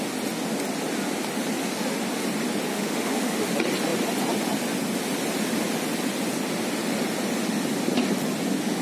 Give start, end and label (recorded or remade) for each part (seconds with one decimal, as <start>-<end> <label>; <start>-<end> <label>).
0.0-2.7 recorded; 2.7-3.5 remade; 3.5-8.8 recorded